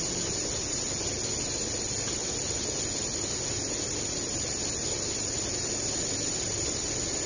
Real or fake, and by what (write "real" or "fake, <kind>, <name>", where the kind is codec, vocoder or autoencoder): real